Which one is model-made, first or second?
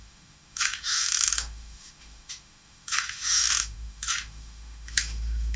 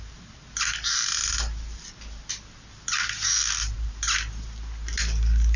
first